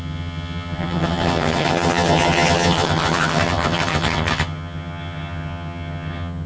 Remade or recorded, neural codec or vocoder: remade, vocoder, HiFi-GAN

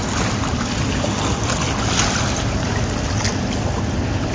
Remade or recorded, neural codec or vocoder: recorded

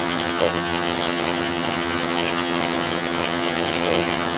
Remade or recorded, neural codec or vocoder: remade, vocoder, HiFi-GAN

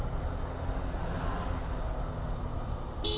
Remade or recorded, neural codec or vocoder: recorded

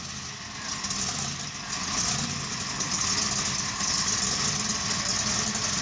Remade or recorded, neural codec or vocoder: recorded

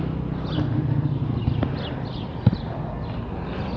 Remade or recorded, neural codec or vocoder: recorded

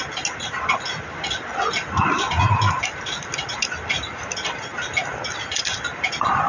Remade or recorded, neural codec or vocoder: recorded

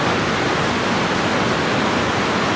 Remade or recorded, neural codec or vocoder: recorded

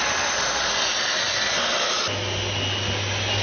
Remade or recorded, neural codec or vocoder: recorded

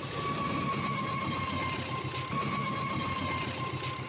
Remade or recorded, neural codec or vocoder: recorded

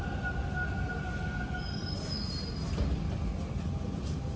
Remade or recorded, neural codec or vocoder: recorded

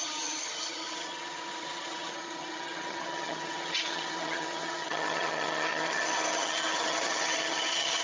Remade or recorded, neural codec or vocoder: remade, vocoder, HiFi-GAN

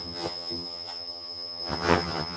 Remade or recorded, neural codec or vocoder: remade, vocoder, HiFi-GAN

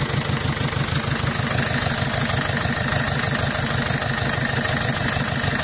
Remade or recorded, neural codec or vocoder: recorded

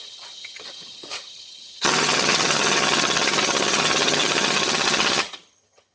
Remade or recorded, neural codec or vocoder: remade, vocoder, HiFi-GAN